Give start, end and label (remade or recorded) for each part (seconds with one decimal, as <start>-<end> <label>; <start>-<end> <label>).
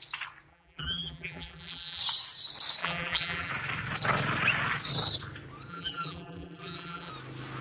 0.0-0.5 recorded; 0.5-2.0 remade; 2.0-2.8 recorded; 2.8-3.5 remade; 3.5-5.7 recorded; 5.7-7.1 remade; 7.1-7.6 recorded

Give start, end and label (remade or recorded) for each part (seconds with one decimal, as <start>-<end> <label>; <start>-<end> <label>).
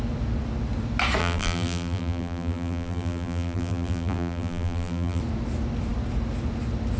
0.0-1.2 recorded; 1.2-5.2 remade; 5.2-7.0 recorded